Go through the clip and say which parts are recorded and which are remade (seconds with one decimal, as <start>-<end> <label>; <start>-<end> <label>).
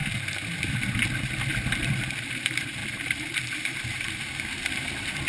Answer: 0.0-1.7 recorded; 1.7-5.3 remade